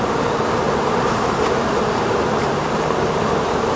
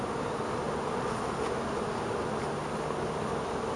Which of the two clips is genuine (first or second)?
second